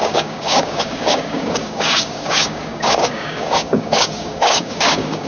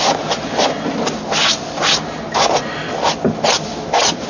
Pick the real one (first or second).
second